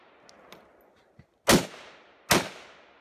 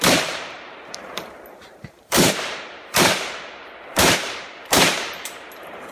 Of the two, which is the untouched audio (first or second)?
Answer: first